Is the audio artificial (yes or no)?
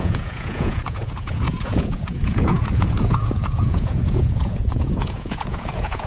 yes